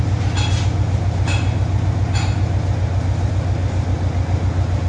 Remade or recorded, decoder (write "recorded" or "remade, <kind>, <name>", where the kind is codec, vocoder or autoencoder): recorded